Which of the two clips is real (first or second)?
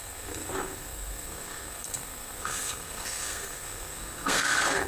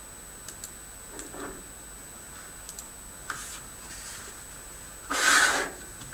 second